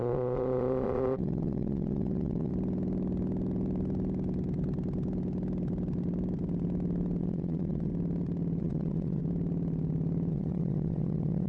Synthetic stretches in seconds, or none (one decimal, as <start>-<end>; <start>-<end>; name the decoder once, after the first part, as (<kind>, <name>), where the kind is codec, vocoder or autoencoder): 0.0-2.5 (vocoder, Vocos); 7.2-7.9; 8.6-9.2; 10.3-11.5